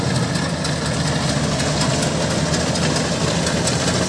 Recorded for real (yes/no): yes